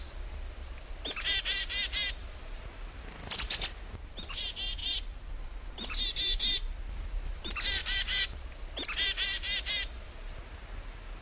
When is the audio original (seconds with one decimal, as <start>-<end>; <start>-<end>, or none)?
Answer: 0.0-2.2; 3.8-4.8; 5.6-11.2